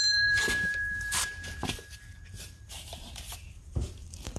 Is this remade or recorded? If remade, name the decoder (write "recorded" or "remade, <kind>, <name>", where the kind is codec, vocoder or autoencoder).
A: remade, vocoder, BigVGAN v2